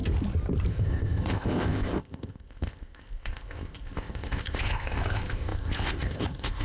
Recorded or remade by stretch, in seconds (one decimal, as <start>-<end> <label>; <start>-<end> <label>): 0.0-0.7 recorded; 0.7-6.6 remade